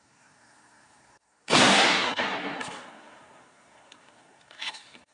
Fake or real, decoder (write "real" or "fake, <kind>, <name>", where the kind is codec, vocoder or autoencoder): fake, codec, SNAC